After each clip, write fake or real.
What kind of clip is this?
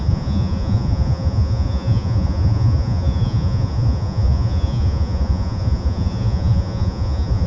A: fake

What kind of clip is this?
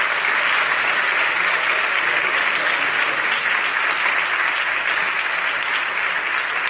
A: real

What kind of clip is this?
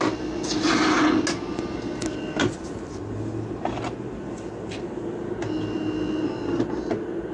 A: real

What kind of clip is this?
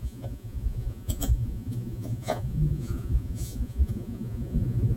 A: fake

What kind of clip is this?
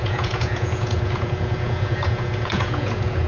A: fake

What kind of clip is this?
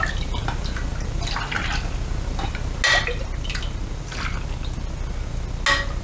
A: real